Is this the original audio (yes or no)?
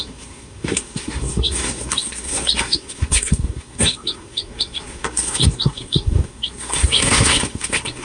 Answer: no